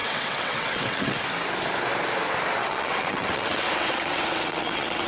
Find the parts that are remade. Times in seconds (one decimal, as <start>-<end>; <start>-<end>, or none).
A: 0.0-1.2; 2.6-5.1

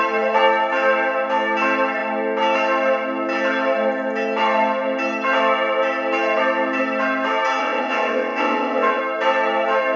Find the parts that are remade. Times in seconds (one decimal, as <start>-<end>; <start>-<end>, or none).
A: 7.6-9.0